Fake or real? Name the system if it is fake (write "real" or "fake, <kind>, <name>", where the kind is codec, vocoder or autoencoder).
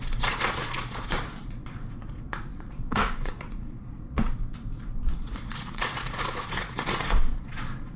fake, vocoder, Vocos